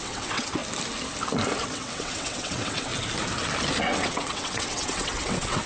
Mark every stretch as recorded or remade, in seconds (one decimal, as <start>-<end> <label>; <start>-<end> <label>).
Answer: 0.0-0.6 remade; 0.6-1.6 recorded; 1.6-2.9 remade; 2.9-3.8 recorded; 3.8-5.7 remade